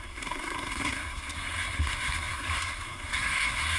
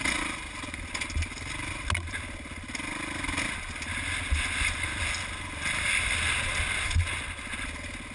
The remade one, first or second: first